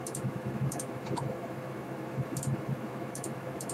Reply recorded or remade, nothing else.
remade